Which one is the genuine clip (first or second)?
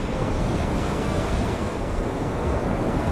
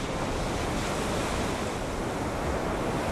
second